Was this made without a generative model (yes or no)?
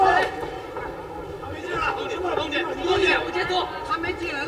yes